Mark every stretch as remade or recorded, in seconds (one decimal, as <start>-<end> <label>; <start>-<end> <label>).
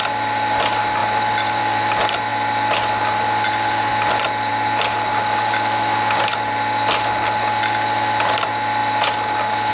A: 0.0-9.7 recorded